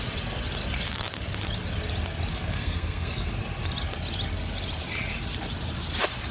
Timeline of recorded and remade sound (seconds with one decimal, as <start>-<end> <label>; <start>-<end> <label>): 0.0-2.3 recorded; 2.3-3.3 remade; 3.3-6.3 recorded